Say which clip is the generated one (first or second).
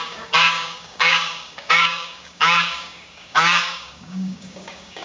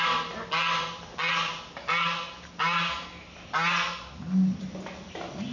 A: first